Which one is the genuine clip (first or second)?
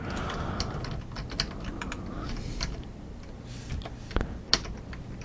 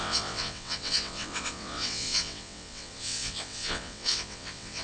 first